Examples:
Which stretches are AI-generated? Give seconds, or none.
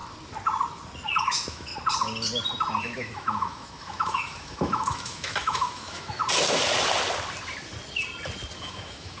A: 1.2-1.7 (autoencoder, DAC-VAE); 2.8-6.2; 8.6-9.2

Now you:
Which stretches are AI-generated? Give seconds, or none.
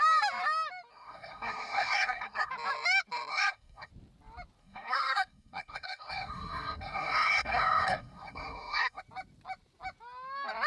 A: 0.9-2.5 (codec, SNAC); 3.3-3.9; 4.6-9.0